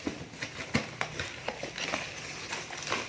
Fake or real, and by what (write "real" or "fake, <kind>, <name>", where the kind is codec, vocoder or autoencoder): real